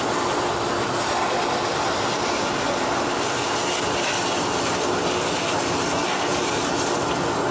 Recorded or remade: recorded